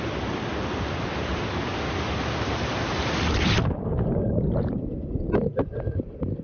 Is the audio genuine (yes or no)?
yes